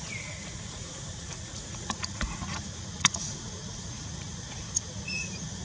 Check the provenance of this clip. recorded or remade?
remade